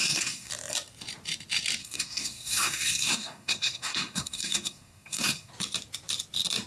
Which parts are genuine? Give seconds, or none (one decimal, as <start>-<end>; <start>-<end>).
0.5-1.8; 5.5-6.7